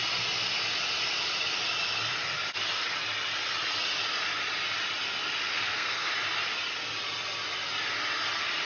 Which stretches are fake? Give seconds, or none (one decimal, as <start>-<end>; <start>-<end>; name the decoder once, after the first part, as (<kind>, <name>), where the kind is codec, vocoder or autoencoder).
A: 5.5-6.1 (codec, SNAC)